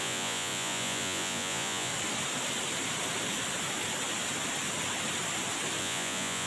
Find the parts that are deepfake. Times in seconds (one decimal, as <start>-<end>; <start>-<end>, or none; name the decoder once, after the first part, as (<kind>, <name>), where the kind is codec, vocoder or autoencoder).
0.0-1.9 (vocoder, Vocos); 5.8-6.5